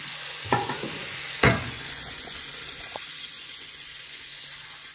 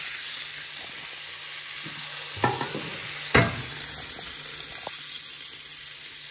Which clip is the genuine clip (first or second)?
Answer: second